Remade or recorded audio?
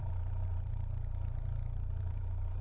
remade